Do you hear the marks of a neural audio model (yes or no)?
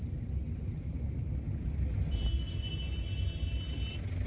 no